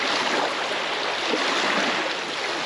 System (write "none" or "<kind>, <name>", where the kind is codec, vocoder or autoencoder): none